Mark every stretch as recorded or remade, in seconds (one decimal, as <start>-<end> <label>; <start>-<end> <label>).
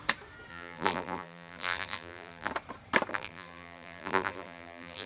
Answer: 0.0-0.5 recorded; 0.5-2.5 remade; 2.5-3.1 recorded; 3.1-5.1 remade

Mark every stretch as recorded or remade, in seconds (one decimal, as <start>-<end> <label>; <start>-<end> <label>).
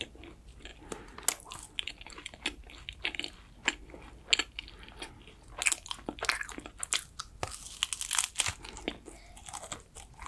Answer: 0.0-10.3 recorded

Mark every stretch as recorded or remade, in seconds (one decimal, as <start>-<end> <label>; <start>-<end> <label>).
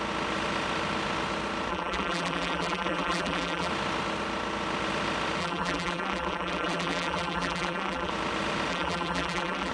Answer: 0.0-1.7 recorded; 1.7-3.7 remade; 3.7-5.4 recorded; 5.4-8.1 remade; 8.1-8.7 recorded; 8.7-9.7 remade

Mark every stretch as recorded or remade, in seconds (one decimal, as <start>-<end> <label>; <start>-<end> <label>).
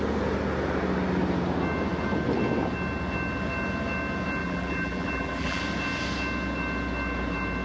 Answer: 0.0-4.4 recorded; 4.4-5.6 remade; 5.6-7.6 recorded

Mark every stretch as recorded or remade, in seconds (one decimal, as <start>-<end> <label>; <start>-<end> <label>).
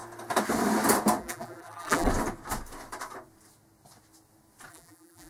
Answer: 0.0-1.2 recorded; 1.2-2.1 remade; 2.1-4.7 recorded; 4.7-5.3 remade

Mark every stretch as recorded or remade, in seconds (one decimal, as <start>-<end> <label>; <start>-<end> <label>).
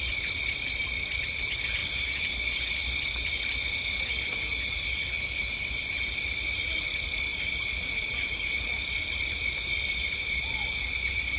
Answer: 0.0-1.8 remade; 1.8-5.3 recorded; 5.3-11.4 remade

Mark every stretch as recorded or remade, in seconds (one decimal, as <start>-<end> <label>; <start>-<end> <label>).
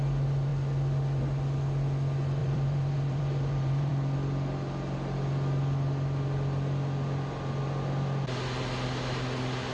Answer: 0.0-2.4 recorded; 2.4-3.9 remade; 3.9-9.7 recorded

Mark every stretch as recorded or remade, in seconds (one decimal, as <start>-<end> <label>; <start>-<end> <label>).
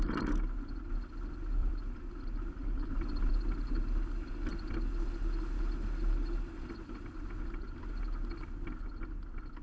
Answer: 0.0-1.6 recorded; 1.6-3.3 remade; 3.3-9.6 recorded